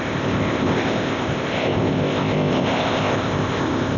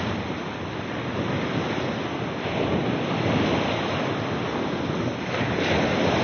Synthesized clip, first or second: first